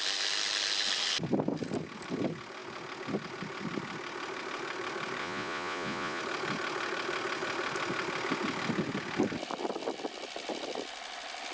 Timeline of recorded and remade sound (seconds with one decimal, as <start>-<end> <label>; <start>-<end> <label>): 0.0-5.2 recorded; 5.2-6.2 remade; 6.2-11.5 recorded